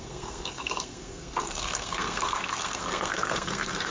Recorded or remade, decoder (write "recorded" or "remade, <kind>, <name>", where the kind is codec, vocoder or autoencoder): remade, codec, SNAC